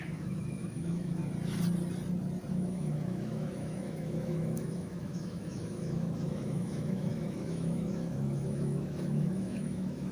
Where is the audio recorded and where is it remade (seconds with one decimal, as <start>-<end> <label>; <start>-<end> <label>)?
0.0-1.2 remade; 1.2-2.5 recorded; 2.5-10.1 remade

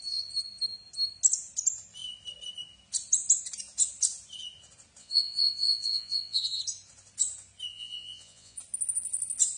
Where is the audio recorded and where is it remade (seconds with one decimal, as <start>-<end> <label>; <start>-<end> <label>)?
0.0-5.0 recorded; 5.0-6.6 remade; 6.6-7.7 recorded; 7.7-8.6 remade; 8.6-9.6 recorded